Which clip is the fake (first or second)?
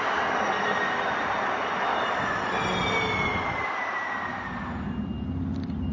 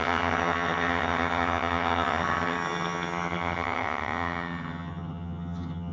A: second